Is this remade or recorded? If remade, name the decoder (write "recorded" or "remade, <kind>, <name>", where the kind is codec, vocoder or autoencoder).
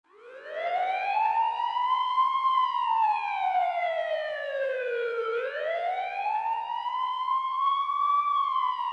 remade, vocoder, Vocos